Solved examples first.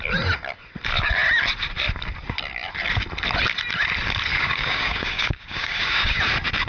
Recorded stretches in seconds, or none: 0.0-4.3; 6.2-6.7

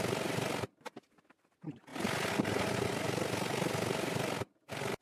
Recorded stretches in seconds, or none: 0.0-5.0

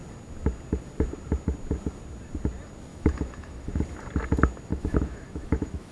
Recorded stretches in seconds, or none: 0.0-2.9; 3.7-4.7

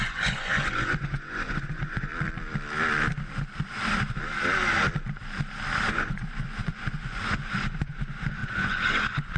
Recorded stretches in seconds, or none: 2.1-5.9

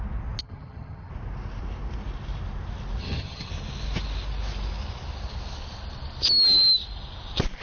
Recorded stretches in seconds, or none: 0.0-0.4; 1.1-3.0; 3.5-7.6

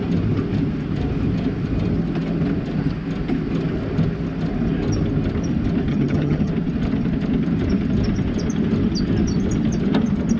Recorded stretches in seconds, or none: 0.0-5.9; 6.5-10.4

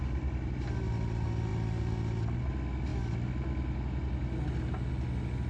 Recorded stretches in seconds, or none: 0.0-5.5

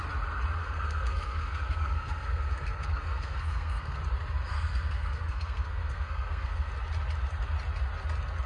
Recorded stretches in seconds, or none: 0.0-0.6; 4.0-4.5; 6.7-8.5